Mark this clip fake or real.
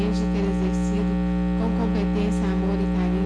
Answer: real